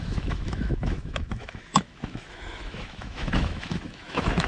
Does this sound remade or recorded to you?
remade